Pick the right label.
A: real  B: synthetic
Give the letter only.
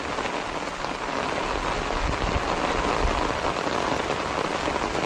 A